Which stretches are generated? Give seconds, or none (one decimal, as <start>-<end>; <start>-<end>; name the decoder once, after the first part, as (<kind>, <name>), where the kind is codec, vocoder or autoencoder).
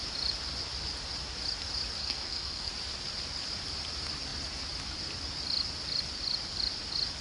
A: 2.0-2.7 (codec, SNAC)